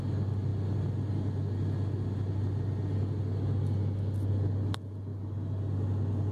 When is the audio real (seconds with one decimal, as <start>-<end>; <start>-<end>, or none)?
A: 0.0-6.3